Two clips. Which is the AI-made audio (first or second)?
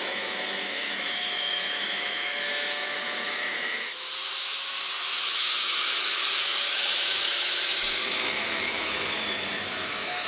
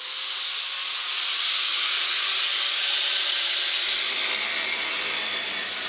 first